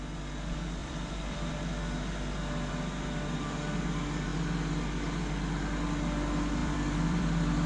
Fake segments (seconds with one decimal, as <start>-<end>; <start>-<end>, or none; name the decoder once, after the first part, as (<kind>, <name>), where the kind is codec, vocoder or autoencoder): 0.8-1.5 (vocoder, BigVGAN v2); 6.6-7.7